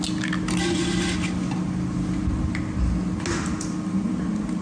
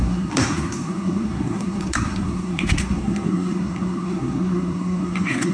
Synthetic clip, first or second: second